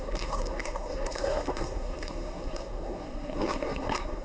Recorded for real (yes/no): no